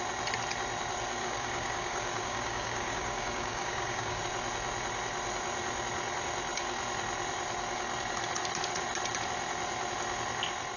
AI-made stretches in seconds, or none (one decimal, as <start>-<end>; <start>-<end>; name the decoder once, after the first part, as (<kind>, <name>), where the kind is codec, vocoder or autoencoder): 1.2-4.2 (codec, DAC)